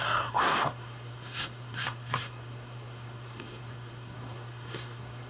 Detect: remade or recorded remade